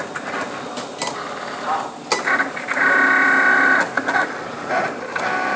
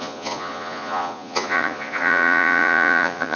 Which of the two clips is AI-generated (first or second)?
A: second